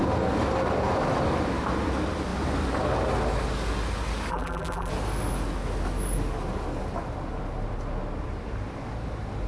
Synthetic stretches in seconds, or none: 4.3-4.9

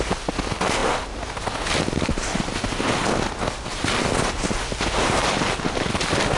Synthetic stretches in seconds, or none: 5.2-5.9

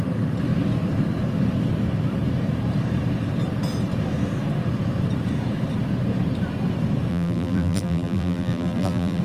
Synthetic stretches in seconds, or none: 7.1-9.2